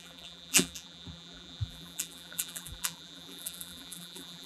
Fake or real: fake